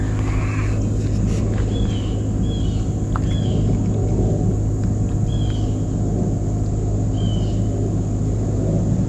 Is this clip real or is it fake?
real